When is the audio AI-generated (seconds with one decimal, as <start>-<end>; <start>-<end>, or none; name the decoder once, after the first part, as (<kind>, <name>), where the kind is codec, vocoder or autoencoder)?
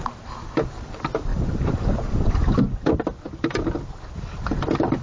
0.0-3.1 (vocoder, BigVGAN v2); 4.4-5.0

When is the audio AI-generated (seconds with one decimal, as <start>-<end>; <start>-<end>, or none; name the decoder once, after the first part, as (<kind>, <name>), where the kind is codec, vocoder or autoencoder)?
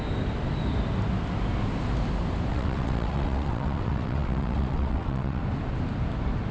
2.5-5.4 (vocoder, WaveNeXt)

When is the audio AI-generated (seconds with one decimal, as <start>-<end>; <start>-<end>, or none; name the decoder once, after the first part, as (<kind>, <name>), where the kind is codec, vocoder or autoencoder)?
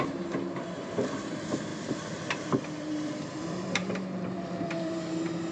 1.7-5.0 (vocoder, BigVGAN v2)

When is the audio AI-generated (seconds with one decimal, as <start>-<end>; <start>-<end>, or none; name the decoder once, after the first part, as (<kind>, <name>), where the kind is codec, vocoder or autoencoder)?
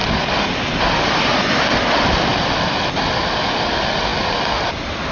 none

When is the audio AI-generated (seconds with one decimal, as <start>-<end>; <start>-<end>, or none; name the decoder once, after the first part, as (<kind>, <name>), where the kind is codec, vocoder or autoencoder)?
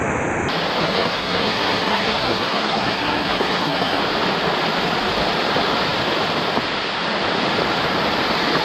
0.8-4.0 (codec, SNAC)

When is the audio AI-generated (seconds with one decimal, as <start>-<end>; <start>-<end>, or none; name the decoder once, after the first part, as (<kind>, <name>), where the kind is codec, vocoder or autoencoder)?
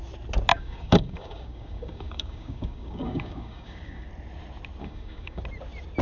0.5-4.1 (codec, DAC); 4.8-5.4